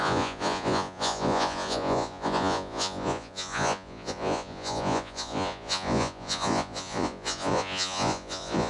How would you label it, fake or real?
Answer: fake